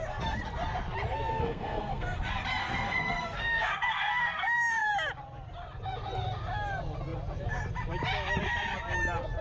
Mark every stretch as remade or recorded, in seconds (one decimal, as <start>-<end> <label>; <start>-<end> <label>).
0.0-1.3 recorded; 1.3-2.2 remade; 2.2-2.6 recorded; 2.6-4.9 remade; 4.9-9.4 recorded